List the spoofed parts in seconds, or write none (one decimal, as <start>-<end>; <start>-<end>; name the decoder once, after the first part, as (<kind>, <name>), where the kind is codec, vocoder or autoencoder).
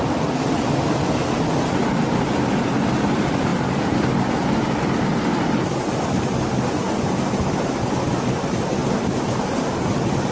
none